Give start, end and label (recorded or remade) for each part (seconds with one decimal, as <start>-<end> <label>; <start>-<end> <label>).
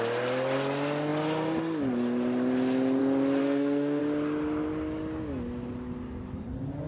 0.0-3.4 recorded; 3.4-4.0 remade; 4.0-6.9 recorded